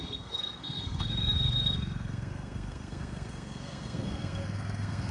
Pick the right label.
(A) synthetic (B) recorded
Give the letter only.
A